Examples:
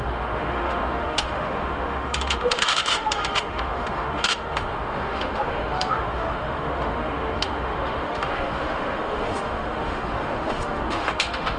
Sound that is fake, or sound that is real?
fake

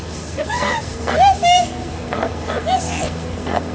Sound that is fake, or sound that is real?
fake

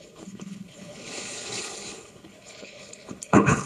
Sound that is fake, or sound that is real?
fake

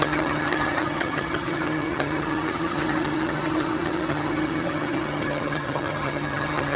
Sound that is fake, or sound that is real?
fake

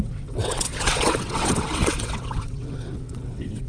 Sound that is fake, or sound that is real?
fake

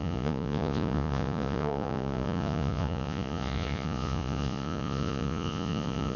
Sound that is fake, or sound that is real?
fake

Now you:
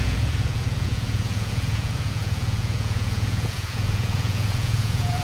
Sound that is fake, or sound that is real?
fake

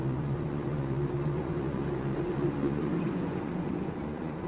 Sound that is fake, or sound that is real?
fake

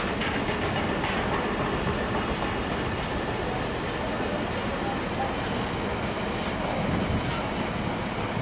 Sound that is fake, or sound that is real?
real